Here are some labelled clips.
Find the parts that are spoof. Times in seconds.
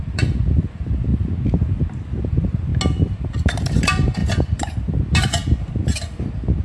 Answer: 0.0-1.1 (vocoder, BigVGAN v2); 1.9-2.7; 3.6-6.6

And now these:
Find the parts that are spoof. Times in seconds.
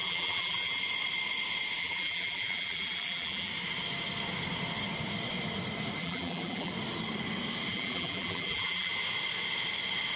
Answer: 0.0-0.8 (vocoder, BigVGAN v2); 1.8-3.5; 6.0-6.7; 7.7-8.9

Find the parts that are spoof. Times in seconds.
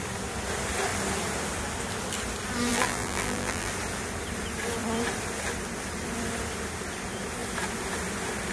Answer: 2.7-3.7 (vocoder, BigVGAN v2)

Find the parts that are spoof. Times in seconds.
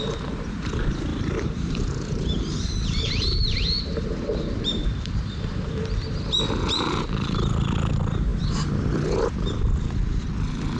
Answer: 1.1-5.7 (vocoder, BigVGAN v2)